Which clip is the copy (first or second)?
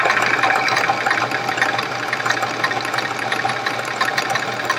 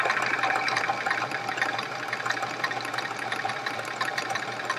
second